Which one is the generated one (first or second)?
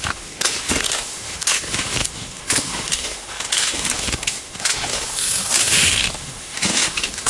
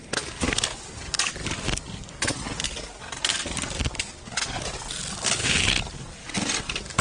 first